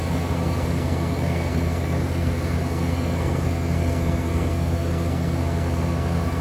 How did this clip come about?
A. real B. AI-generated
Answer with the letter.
B